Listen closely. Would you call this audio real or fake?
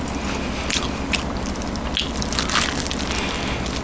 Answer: real